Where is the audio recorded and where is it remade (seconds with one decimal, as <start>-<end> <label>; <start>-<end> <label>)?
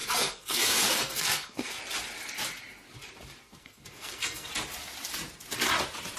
0.0-1.8 remade; 1.8-3.4 recorded; 3.4-4.5 remade; 4.5-6.2 recorded